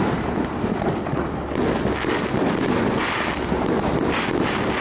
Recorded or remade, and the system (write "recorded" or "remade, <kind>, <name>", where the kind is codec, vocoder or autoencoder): recorded